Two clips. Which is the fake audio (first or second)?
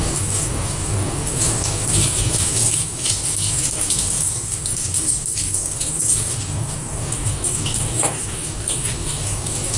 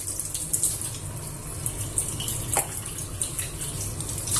first